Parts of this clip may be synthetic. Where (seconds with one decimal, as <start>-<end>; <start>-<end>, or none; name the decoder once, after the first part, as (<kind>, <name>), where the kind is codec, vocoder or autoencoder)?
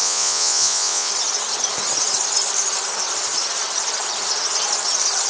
0.0-1.1 (vocoder, Vocos)